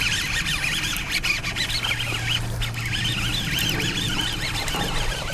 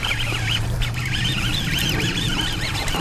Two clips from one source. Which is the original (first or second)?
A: first